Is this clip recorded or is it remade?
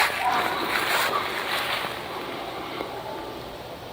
recorded